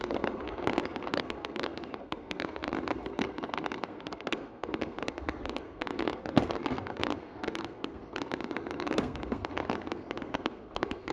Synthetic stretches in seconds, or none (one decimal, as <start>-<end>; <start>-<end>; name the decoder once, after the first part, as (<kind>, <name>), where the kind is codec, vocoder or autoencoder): 0.0-11.1 (codec, SNAC)